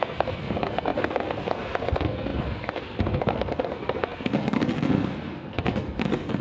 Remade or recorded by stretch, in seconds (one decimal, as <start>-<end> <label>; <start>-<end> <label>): 0.0-6.4 remade